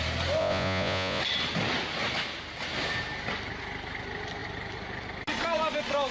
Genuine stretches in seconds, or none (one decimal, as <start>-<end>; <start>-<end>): 0.0-0.4; 1.2-6.1